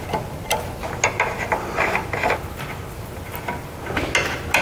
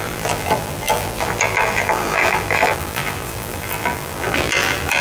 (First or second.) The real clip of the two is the first